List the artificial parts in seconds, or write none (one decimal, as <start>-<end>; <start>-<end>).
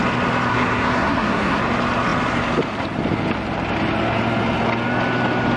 0.5-1.6